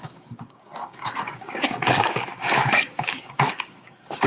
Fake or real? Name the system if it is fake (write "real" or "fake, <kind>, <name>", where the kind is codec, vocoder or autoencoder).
fake, codec, DAC